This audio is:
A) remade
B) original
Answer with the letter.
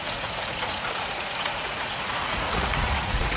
A